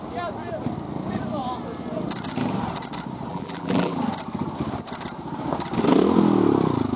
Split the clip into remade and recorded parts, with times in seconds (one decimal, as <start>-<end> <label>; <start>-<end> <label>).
0.0-3.3 recorded; 3.3-4.0 remade; 4.0-7.0 recorded